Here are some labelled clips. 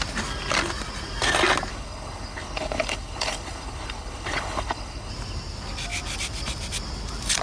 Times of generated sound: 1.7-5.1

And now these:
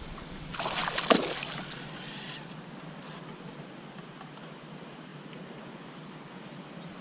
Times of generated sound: none

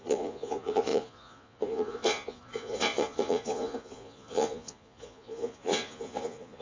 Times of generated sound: 0.0-6.6

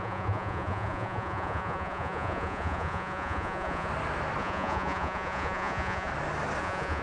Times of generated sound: 0.0-3.9; 4.4-6.1; 6.6-7.0

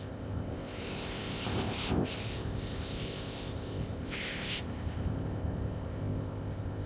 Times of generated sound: 0.0-6.9